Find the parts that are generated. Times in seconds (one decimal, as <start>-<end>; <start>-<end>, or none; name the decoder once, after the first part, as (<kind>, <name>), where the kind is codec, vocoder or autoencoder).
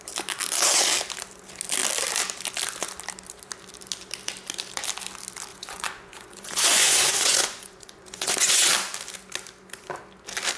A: 5.5-8.7 (vocoder, Vocos)